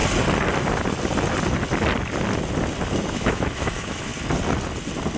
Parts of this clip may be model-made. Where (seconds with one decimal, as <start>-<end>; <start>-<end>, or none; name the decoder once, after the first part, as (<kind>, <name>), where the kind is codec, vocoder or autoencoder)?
3.1-4.1 (autoencoder, DAC-VAE)